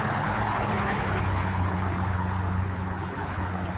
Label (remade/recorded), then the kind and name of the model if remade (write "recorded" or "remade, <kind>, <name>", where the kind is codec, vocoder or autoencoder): remade, codec, HILCodec